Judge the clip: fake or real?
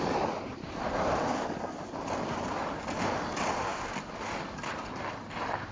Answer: real